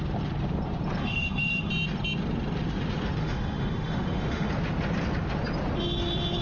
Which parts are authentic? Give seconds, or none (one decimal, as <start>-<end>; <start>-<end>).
0.0-1.0; 1.7-3.2; 4.5-6.4